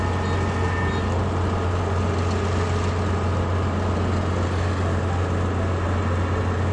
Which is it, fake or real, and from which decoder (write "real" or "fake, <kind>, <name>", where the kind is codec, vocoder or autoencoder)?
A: real